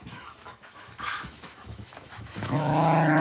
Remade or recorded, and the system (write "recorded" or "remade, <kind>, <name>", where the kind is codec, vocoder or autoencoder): remade, autoencoder, DAC-VAE